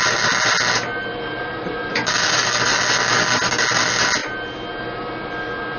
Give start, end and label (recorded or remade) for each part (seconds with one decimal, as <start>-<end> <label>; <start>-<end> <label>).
0.0-1.1 recorded; 1.1-1.9 remade; 1.9-5.8 recorded